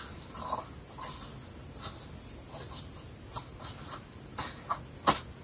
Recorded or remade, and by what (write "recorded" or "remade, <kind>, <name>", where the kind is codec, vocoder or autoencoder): recorded